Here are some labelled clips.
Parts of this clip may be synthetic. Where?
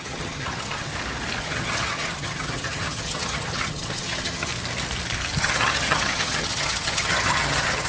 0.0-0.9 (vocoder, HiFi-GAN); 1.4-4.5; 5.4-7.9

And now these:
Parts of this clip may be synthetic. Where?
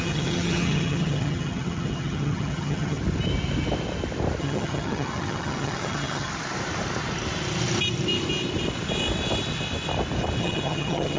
0.0-3.0 (vocoder, HiFi-GAN); 4.4-6.3; 10.4-11.2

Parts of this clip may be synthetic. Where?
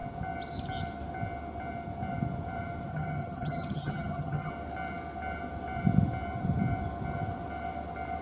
2.9-4.5 (vocoder, HiFi-GAN)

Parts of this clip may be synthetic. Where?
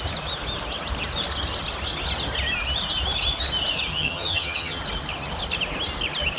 3.9-4.8 (vocoder, HiFi-GAN)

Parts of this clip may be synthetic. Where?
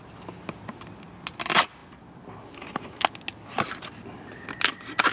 none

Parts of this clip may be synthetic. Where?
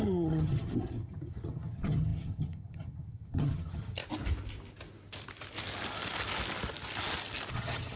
0.0-4.0 (vocoder, HiFi-GAN); 7.5-8.0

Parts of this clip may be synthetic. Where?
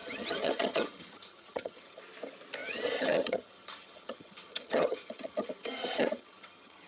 0.0-2.0 (vocoder, HiFi-GAN); 2.6-6.9